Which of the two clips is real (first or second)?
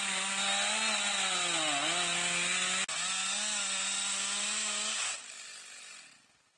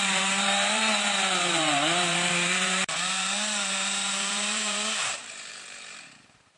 first